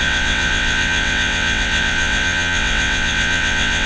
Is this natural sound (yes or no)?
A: no